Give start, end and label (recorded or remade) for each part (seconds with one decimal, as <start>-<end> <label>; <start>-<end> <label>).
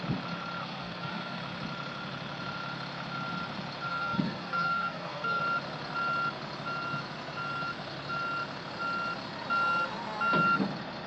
0.0-0.6 recorded; 0.6-1.4 remade; 1.4-3.9 recorded; 3.9-5.4 remade; 5.4-11.1 recorded